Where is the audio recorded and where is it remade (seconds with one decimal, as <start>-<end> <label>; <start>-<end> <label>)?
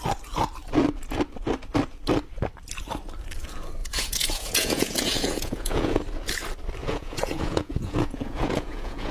0.0-3.8 recorded; 3.8-6.0 remade; 6.0-6.8 recorded; 6.8-9.1 remade